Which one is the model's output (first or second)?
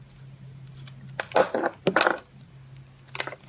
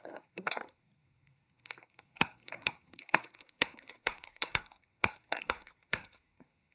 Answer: second